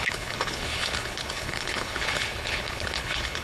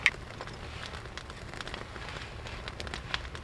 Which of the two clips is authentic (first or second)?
second